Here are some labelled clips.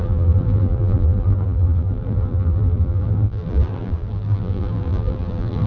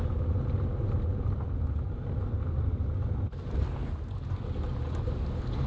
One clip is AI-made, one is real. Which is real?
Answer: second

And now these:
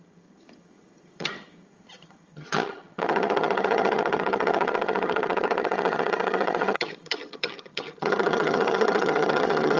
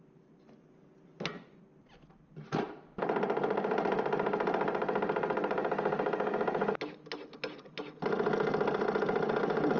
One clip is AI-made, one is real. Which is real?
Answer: second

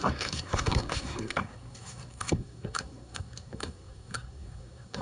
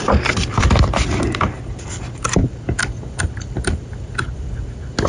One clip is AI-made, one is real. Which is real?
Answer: second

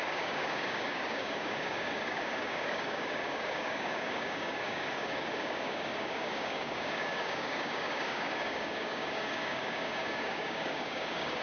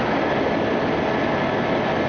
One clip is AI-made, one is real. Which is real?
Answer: second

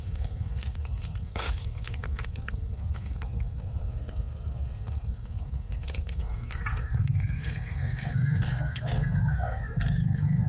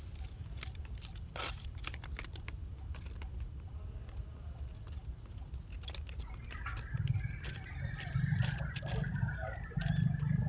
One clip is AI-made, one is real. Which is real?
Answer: second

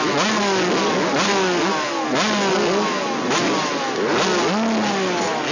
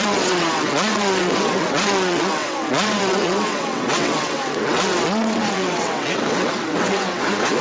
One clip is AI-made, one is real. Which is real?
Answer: first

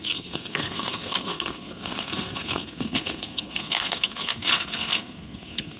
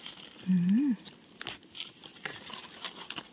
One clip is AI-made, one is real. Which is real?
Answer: second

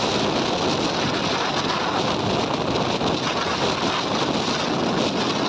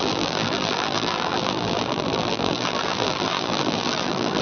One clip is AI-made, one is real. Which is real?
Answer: first